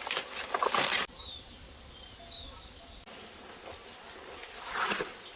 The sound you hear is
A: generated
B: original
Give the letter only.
B